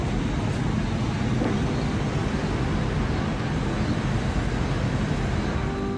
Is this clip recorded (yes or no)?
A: yes